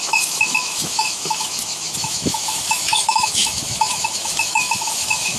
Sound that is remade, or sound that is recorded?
remade